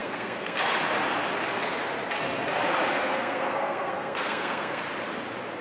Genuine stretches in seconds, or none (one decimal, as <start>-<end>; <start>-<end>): 0.6-3.0; 4.8-5.6